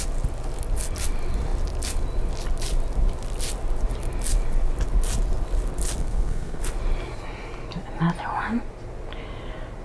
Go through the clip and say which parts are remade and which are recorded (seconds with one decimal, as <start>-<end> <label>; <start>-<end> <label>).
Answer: 0.0-6.0 recorded; 6.0-6.6 remade; 6.6-9.8 recorded